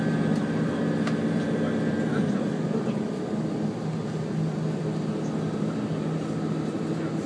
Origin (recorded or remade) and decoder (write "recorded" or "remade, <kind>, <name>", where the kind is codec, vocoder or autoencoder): recorded